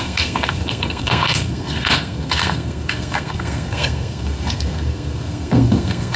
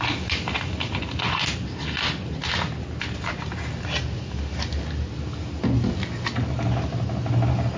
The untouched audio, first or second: second